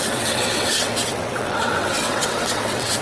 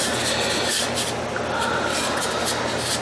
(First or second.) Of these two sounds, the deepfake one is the first